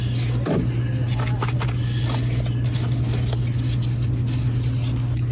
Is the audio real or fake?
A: real